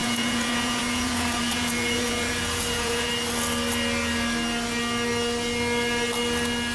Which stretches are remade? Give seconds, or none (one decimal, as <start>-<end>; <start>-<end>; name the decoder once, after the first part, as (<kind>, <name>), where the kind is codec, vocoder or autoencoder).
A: 0.0-3.1 (vocoder, Vocos)